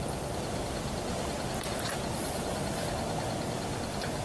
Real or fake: real